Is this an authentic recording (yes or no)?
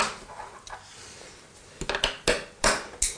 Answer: yes